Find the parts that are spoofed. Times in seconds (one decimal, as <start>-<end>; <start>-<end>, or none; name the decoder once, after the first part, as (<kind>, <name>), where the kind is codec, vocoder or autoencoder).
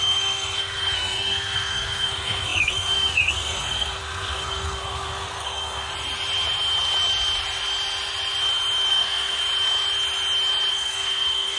0.0-5.9 (codec, SNAC); 8.9-9.4; 10.7-11.6